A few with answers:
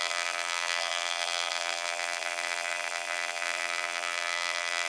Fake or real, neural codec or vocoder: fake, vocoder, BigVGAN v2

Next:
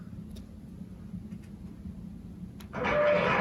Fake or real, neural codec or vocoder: real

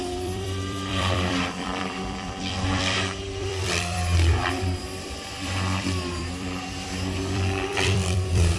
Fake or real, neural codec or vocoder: fake, vocoder, BigVGAN v2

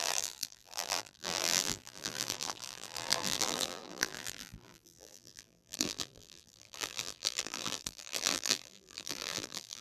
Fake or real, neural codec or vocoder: fake, vocoder, BigVGAN v2